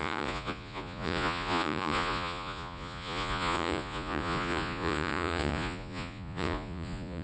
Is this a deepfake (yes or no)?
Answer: yes